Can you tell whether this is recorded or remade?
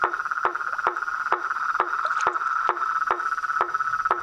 recorded